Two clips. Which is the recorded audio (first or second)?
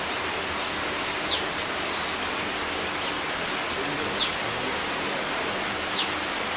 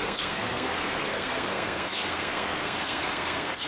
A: first